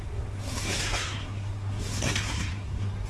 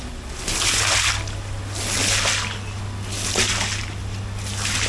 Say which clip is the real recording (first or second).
second